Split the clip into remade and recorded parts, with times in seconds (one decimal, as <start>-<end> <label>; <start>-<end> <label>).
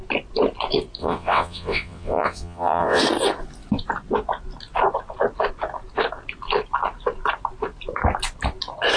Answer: 0.0-1.0 recorded; 1.0-3.0 remade; 3.0-9.0 recorded